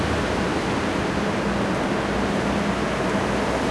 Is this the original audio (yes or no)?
yes